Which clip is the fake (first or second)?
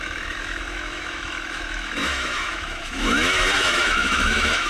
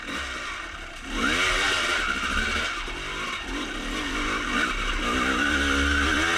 first